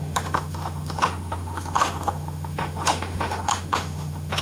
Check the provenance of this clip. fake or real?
fake